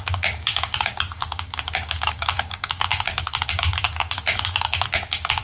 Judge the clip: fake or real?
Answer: fake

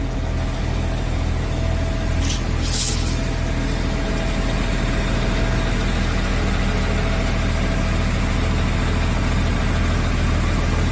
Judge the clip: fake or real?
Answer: real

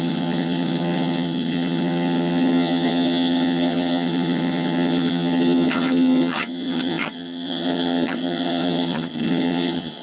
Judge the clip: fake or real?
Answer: fake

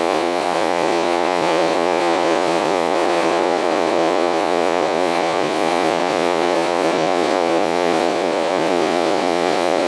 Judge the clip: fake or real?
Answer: fake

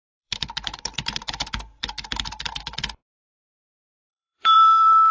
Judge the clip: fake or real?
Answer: fake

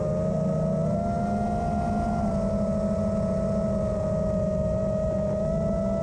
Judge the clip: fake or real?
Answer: real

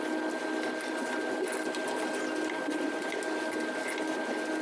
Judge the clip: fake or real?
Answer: real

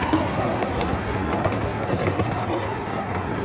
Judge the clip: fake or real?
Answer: fake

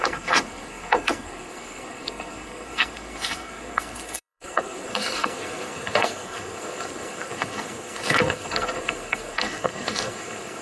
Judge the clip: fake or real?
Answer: fake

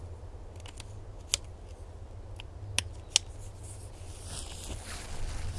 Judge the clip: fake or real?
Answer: real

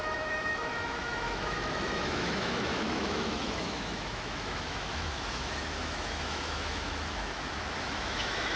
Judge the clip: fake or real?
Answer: fake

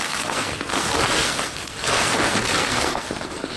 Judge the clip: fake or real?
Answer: fake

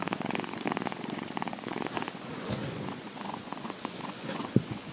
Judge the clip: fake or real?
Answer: fake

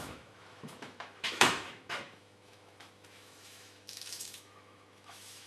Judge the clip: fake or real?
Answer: fake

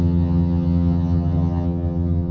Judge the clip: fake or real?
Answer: fake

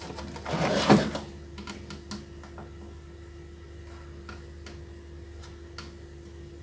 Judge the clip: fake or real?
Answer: real